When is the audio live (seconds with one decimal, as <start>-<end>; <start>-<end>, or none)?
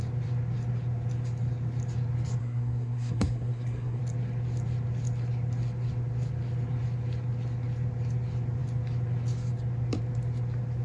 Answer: 0.0-2.4; 4.0-10.8